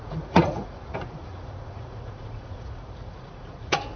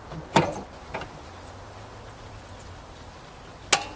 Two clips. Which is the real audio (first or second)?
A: second